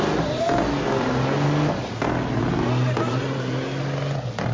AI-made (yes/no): no